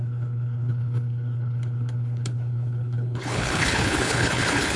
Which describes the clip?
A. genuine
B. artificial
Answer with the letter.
B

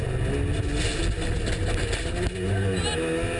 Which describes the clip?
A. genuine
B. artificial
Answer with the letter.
A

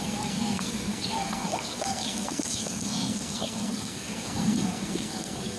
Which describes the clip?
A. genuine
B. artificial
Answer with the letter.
B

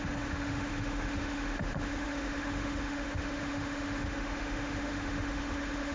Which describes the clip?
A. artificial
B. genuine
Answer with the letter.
A